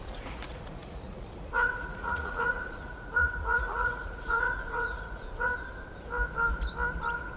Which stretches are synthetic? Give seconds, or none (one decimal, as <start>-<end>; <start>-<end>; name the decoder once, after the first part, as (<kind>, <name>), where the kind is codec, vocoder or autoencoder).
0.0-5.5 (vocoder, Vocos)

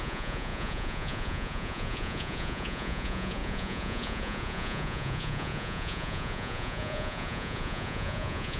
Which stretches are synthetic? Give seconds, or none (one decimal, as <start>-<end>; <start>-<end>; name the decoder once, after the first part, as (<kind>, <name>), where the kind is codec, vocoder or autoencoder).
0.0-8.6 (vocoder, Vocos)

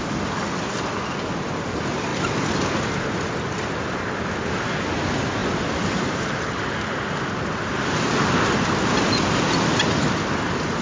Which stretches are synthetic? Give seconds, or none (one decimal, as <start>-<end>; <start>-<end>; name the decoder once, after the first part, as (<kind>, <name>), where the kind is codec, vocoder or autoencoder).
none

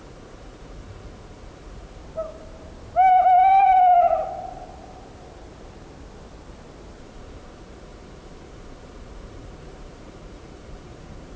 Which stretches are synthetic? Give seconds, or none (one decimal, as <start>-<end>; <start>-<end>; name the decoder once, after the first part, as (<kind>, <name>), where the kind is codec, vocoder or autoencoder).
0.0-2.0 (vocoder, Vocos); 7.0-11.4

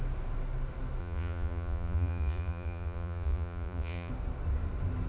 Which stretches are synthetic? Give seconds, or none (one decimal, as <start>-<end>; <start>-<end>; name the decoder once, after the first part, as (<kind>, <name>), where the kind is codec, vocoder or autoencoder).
1.0-4.1 (vocoder, Vocos)